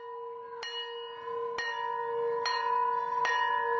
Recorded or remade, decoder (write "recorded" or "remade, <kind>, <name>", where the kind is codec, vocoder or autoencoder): recorded